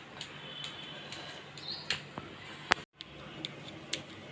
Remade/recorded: recorded